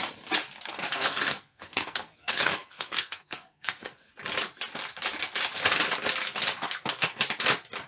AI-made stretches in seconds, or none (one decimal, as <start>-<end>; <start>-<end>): 0.7-4.1; 6.6-7.2

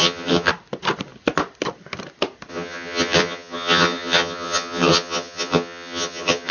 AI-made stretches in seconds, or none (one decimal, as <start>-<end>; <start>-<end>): 0.0-0.5; 2.5-6.5

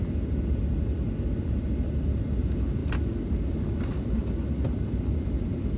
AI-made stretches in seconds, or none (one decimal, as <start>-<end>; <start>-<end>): none

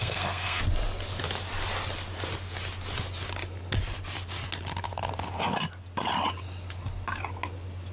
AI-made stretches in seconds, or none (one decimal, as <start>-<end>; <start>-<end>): 0.0-0.6

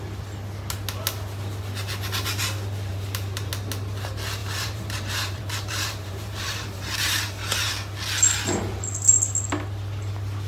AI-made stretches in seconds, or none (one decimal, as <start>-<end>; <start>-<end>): 2.9-3.5; 4.4-7.7

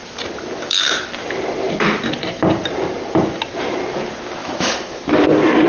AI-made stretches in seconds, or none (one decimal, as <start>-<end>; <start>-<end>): 4.4-5.0